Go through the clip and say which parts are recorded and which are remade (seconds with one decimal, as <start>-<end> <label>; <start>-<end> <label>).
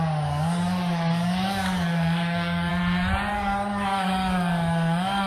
0.0-2.7 remade; 2.7-3.3 recorded; 3.3-5.3 remade